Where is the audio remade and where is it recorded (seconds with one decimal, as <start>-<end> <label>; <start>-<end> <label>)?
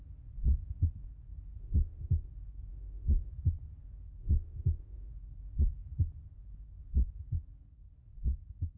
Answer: 0.0-1.6 recorded; 1.6-2.3 remade; 2.3-2.7 recorded; 2.7-3.3 remade; 3.3-4.2 recorded; 4.2-5.1 remade; 5.1-8.8 recorded